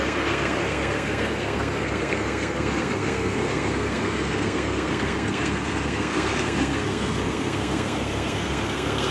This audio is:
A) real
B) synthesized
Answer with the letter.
B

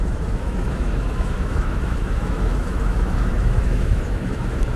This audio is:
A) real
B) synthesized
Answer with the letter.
B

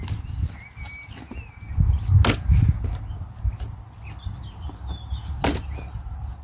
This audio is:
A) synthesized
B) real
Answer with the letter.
B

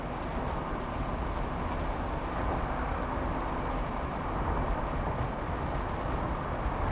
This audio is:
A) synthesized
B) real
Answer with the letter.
B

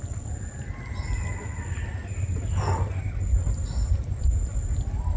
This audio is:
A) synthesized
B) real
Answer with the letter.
B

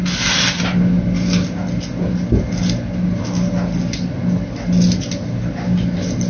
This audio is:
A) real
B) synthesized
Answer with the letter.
A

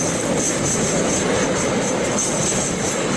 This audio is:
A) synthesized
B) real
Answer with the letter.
B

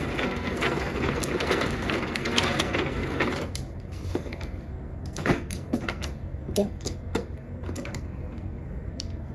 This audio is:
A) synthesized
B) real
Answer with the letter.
A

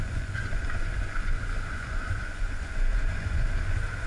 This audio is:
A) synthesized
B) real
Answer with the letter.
A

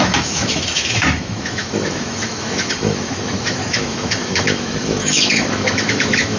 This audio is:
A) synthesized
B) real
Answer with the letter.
A